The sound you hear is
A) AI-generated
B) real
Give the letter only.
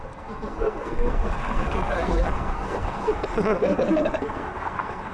A